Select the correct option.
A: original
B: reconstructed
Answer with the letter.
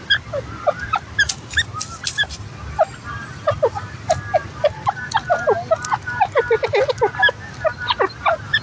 A